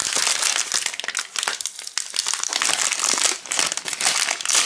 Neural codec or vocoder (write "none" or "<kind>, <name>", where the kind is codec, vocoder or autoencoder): none